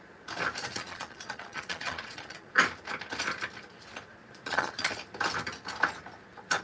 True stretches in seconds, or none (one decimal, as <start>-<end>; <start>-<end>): 0.0-0.6; 2.5-4.2; 4.9-6.6